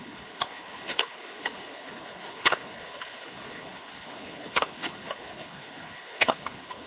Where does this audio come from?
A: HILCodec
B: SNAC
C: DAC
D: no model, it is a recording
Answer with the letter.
A